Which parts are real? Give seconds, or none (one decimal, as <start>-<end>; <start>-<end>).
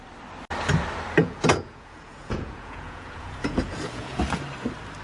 0.0-1.2; 4.2-5.0